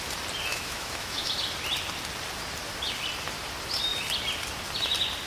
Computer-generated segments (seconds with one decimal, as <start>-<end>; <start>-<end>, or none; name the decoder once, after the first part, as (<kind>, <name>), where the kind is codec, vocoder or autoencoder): 0.5-1.3 (autoencoder, DAC-VAE)

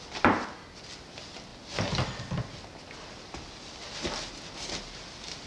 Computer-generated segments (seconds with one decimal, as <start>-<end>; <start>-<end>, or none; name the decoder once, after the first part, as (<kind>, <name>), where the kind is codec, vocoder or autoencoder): none

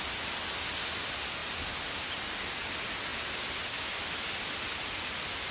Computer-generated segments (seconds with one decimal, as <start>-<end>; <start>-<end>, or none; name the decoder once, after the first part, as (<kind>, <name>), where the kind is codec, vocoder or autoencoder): none

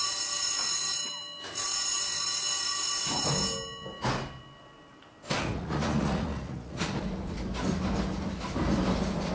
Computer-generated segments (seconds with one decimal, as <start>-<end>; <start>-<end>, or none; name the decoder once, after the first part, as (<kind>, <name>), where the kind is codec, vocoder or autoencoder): 5.4-6.9 (vocoder, Vocos)

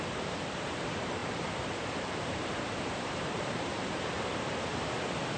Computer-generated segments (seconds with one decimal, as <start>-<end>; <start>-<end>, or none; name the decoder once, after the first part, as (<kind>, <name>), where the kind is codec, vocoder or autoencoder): 0.0-5.4 (vocoder, BigVGAN v2)

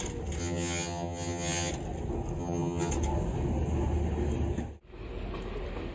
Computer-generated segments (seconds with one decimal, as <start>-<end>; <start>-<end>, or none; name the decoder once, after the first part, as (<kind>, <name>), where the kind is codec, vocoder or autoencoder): 0.4-1.7 (vocoder, HiFi-GAN); 2.4-2.9